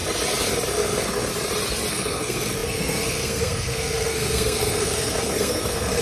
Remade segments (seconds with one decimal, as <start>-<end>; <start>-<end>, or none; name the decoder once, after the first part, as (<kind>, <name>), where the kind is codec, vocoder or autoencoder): 0.7-1.3 (codec, SNAC); 1.9-6.0